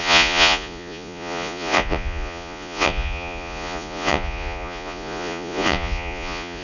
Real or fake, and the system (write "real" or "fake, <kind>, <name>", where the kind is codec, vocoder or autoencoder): fake, vocoder, Vocos